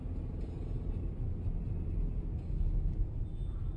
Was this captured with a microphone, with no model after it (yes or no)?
yes